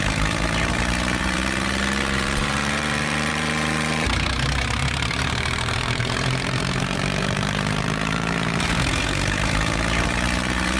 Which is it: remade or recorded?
remade